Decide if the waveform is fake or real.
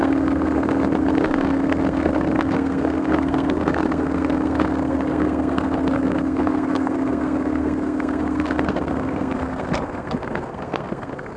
fake